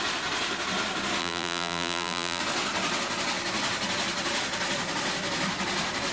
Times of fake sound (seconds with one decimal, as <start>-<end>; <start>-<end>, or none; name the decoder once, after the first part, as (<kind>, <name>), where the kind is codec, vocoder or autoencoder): 1.2-2.4 (vocoder, BigVGAN v2)